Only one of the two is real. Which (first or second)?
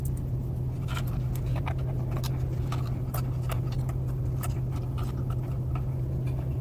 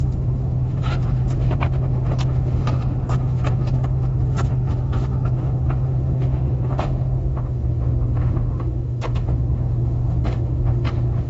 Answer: first